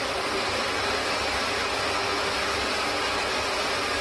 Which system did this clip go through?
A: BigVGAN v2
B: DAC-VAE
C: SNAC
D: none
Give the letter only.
D